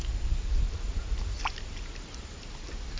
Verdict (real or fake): real